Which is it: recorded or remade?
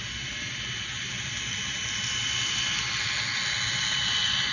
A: recorded